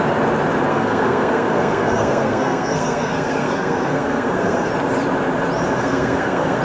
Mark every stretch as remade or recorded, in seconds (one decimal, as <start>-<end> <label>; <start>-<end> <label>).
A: 0.0-0.7 recorded; 0.7-4.7 remade; 4.7-5.8 recorded; 5.8-6.6 remade